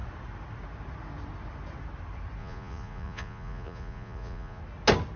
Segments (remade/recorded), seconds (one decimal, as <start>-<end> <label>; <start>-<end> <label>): 0.0-2.4 recorded; 2.4-4.6 remade; 4.6-5.2 recorded